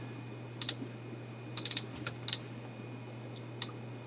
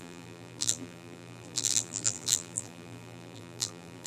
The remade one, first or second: second